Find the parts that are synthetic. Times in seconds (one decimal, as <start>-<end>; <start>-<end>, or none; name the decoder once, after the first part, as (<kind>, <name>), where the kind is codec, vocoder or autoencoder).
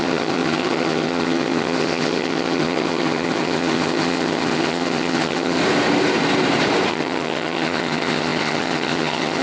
0.0-5.6 (vocoder, HiFi-GAN); 6.9-9.4